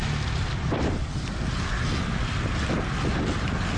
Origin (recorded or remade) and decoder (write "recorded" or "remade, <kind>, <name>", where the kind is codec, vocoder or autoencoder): recorded